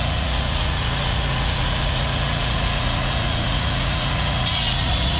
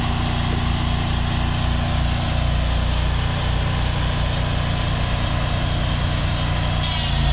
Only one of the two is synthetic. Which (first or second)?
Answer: first